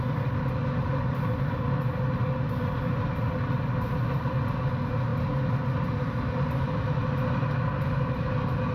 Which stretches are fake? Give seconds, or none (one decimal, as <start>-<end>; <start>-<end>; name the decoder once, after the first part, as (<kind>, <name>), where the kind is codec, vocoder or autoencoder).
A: none